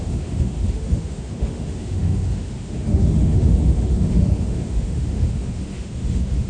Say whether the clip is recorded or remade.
remade